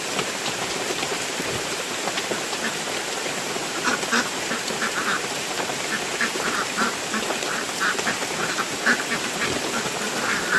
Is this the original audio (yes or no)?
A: no